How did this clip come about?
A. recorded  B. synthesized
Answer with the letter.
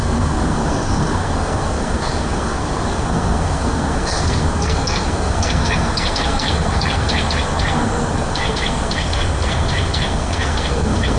B